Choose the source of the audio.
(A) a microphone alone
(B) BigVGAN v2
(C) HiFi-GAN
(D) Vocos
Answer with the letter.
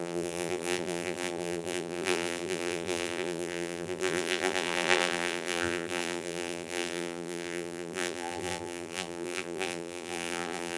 B